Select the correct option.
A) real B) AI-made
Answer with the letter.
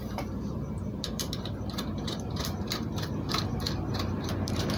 B